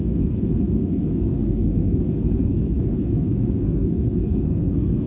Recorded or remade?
remade